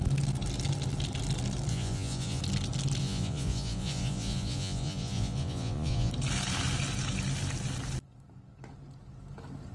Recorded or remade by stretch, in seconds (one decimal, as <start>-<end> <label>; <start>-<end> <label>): 0.0-1.7 recorded; 1.7-2.4 remade; 2.4-3.0 recorded; 3.0-6.1 remade; 6.1-9.7 recorded